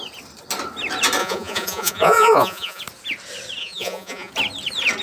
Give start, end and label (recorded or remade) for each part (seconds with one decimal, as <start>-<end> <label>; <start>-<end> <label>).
0.0-1.2 recorded; 1.2-2.8 remade; 2.8-3.6 recorded; 3.6-4.3 remade; 4.3-5.0 recorded

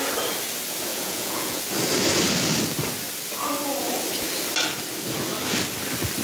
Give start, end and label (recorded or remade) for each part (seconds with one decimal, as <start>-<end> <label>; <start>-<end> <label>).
0.0-0.9 recorded; 0.9-1.6 remade; 1.6-6.2 recorded

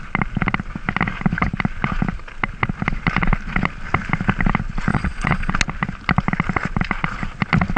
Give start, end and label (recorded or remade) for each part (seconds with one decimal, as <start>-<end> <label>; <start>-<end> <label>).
0.0-4.9 recorded; 4.9-5.5 remade; 5.5-7.8 recorded

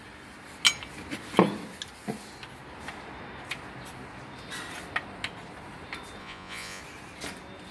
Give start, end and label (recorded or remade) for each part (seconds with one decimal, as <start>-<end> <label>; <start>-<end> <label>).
0.0-6.2 recorded; 6.2-6.8 remade; 6.8-7.7 recorded

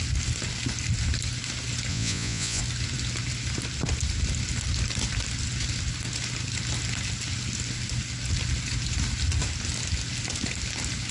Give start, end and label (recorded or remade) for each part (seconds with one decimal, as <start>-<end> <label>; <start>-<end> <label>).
0.0-1.9 recorded; 1.9-2.6 remade; 2.6-11.1 recorded